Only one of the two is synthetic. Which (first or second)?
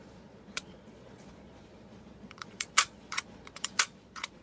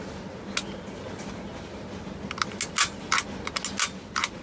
first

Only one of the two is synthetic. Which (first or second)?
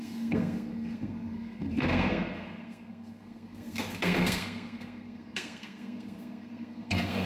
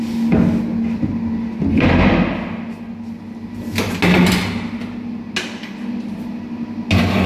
first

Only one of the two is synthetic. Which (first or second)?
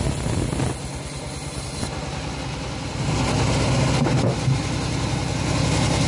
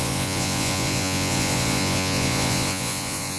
second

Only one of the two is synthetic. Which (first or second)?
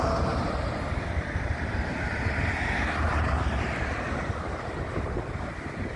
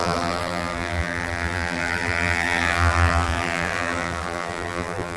second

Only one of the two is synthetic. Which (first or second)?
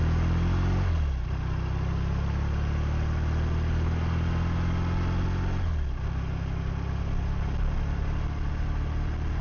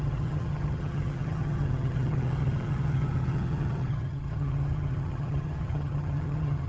second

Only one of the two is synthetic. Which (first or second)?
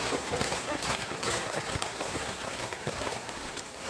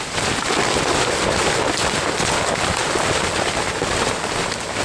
first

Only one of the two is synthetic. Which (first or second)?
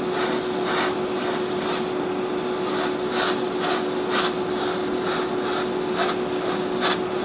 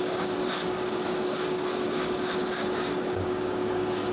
second